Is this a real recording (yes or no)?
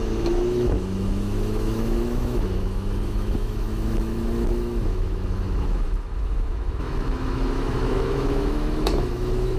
no